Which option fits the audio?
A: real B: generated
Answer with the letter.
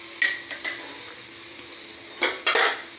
A